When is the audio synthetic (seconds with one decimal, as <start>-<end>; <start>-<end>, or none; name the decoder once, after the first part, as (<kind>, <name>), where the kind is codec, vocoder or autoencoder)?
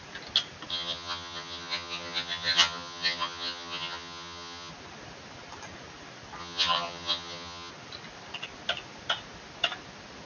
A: 0.7-4.7 (vocoder, HiFi-GAN); 6.4-7.7